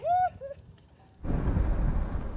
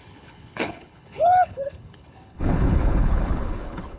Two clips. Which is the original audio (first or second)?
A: first